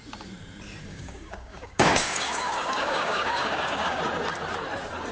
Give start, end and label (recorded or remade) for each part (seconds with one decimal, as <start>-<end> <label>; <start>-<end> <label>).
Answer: 0.0-0.9 recorded; 0.9-4.0 remade; 4.0-5.1 recorded